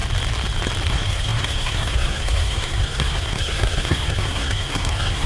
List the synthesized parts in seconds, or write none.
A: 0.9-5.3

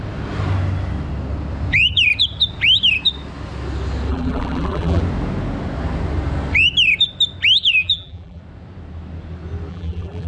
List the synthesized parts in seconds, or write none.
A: 4.1-5.0; 7.8-8.4; 9.7-10.3

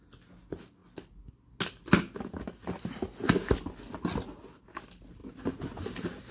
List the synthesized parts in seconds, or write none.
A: none